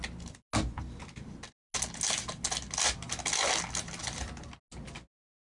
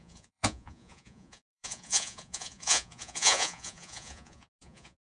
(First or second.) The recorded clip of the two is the first